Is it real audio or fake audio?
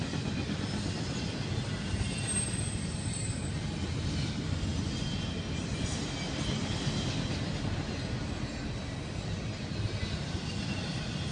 real